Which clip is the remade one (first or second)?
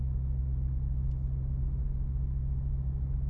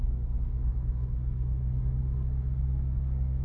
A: second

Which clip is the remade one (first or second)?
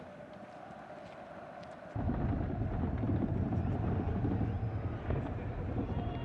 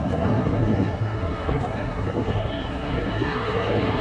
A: second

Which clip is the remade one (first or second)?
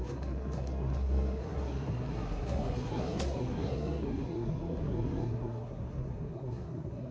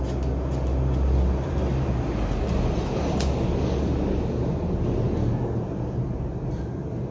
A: first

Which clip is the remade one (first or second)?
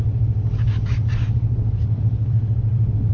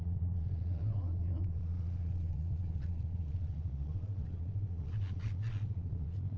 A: second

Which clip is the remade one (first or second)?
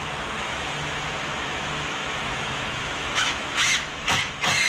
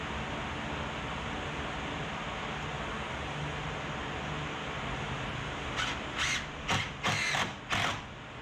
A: first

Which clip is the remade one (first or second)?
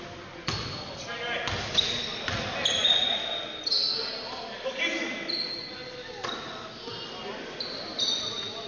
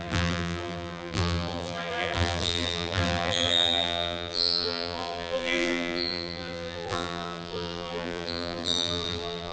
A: second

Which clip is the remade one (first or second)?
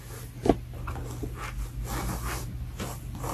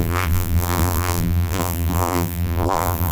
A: second